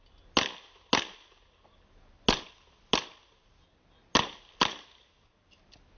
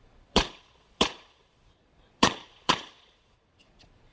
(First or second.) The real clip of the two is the first